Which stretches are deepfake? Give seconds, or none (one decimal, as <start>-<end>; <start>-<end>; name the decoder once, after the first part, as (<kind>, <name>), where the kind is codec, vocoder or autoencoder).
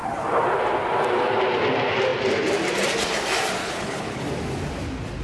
3.6-4.2 (codec, HILCodec)